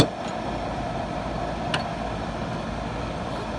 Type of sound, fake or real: real